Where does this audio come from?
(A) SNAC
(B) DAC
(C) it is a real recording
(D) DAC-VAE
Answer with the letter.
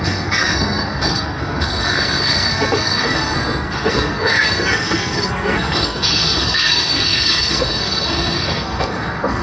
A